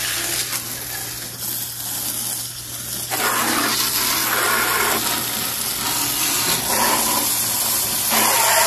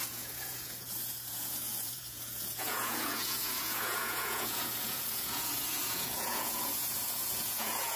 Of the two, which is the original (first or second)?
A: first